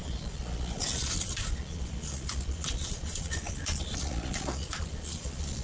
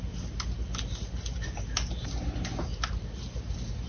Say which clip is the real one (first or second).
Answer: second